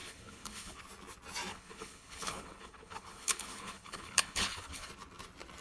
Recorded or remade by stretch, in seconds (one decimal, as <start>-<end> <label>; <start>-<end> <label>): 0.0-0.8 remade; 0.8-1.5 recorded; 1.5-4.9 remade; 4.9-5.6 recorded

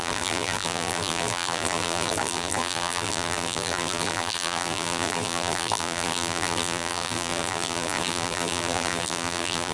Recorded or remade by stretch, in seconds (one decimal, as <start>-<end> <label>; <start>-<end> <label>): 0.0-9.7 remade